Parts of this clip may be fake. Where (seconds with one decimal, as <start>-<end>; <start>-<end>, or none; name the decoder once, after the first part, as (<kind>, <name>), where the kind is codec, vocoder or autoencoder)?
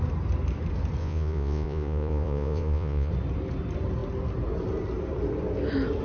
1.0-3.1 (vocoder, Vocos)